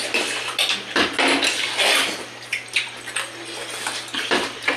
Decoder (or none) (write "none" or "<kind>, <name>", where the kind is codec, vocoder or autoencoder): none